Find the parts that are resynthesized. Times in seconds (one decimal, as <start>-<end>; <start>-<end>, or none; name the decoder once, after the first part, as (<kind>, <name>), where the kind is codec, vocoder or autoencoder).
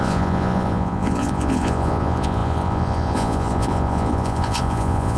0.0-5.2 (vocoder, Vocos)